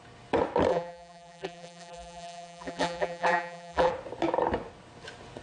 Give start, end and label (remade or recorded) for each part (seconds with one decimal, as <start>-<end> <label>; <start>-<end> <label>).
0.0-0.7 recorded; 0.7-3.9 remade; 3.9-5.4 recorded